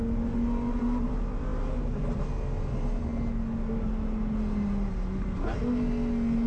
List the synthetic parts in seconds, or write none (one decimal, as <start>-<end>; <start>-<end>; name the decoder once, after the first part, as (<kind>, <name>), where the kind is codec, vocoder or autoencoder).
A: none